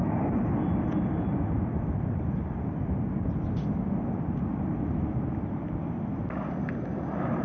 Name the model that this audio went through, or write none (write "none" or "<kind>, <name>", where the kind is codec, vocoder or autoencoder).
none